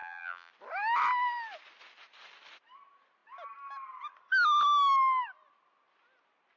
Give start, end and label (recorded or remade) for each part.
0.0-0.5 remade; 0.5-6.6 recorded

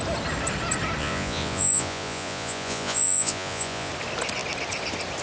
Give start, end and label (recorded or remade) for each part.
0.0-1.0 recorded; 1.0-3.9 remade; 3.9-5.2 recorded

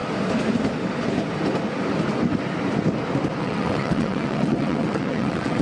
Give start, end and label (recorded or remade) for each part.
0.0-3.4 recorded; 3.4-5.6 remade